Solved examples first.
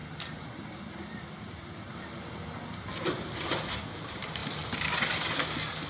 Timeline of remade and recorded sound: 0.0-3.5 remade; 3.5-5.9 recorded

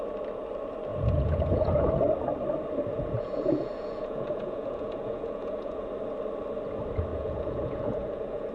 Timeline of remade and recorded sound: 0.0-0.9 recorded; 0.9-1.9 remade; 1.9-2.9 recorded; 2.9-5.9 remade; 5.9-7.1 recorded; 7.1-8.5 remade